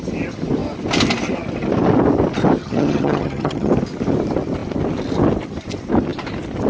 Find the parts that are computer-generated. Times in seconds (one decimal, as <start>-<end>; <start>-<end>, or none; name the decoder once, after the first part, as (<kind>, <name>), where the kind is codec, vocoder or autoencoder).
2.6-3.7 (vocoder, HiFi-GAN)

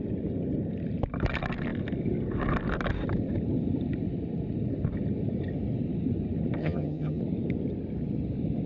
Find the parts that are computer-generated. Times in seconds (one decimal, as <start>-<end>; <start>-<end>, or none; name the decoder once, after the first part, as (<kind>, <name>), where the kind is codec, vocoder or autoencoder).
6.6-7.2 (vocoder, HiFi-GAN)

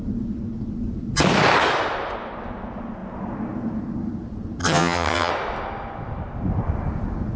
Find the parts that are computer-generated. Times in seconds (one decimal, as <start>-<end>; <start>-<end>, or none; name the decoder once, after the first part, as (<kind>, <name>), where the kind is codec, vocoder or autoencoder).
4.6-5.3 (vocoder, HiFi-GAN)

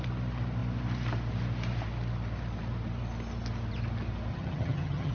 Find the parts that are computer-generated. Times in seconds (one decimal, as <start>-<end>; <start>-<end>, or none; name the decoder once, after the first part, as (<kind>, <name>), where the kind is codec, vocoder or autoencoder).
4.3-5.1 (vocoder, HiFi-GAN)

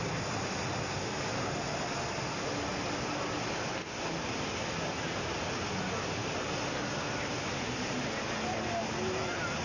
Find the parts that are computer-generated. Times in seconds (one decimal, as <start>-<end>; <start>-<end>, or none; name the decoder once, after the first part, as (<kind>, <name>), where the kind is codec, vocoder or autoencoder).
none

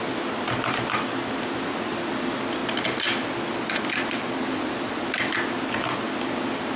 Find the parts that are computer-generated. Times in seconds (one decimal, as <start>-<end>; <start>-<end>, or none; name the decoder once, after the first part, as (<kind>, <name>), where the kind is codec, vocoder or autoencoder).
none

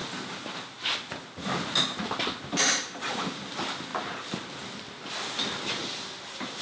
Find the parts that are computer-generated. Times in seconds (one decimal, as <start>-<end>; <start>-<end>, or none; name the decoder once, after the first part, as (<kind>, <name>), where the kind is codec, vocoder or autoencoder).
none

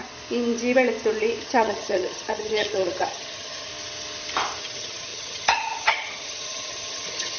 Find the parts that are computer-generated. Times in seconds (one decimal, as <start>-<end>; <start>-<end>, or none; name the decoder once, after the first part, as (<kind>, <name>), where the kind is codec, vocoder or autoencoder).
1.4-3.7 (vocoder, HiFi-GAN); 4.6-7.4